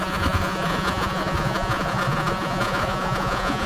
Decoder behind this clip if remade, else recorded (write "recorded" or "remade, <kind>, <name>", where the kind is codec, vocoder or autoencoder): remade, vocoder, Vocos